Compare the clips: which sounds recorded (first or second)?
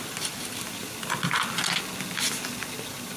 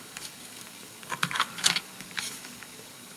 first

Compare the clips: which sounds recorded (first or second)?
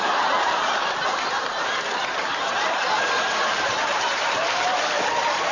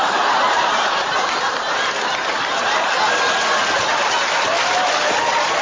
second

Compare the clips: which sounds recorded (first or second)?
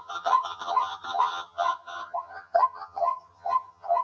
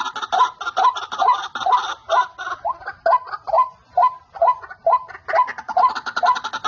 second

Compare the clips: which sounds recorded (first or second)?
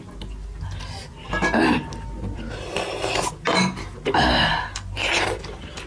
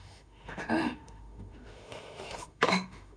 first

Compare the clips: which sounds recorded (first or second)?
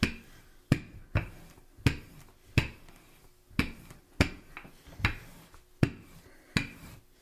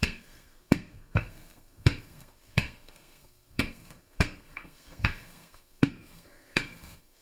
first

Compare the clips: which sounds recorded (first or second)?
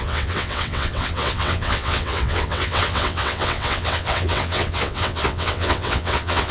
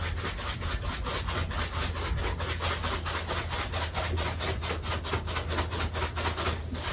second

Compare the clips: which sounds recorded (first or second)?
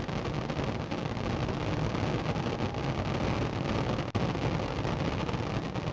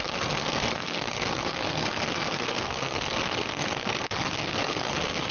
first